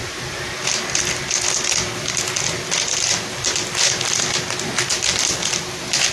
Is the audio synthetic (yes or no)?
no